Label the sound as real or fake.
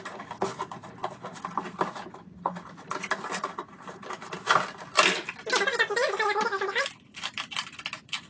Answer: real